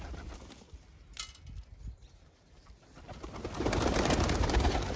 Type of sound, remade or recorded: recorded